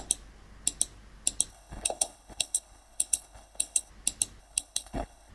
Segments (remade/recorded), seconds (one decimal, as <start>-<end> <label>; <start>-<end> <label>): 0.0-1.5 recorded; 1.5-3.9 remade; 3.9-4.4 recorded; 4.4-5.3 remade